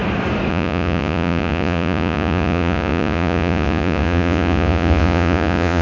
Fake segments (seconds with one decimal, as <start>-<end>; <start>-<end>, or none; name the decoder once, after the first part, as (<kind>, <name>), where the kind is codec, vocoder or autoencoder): 0.5-5.8 (vocoder, Vocos)